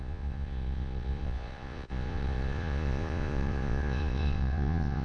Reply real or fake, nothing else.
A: fake